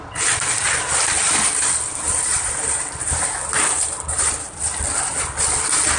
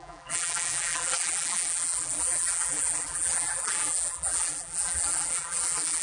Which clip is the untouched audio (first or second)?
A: first